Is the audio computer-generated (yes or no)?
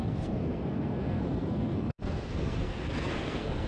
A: yes